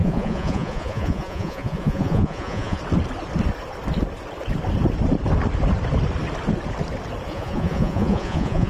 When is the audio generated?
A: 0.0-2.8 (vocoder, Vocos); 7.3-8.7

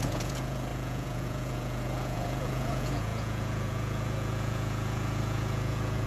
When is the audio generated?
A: 0.0-6.1 (vocoder, Vocos)

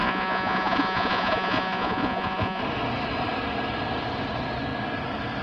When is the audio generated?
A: 0.0-2.6 (vocoder, Vocos)